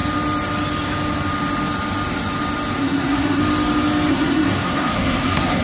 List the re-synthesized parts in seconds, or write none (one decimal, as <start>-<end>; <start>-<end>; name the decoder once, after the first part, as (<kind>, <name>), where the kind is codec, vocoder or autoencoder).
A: 2.8-3.4 (codec, SNAC); 4.1-5.6